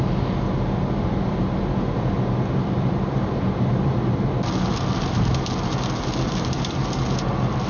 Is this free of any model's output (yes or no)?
yes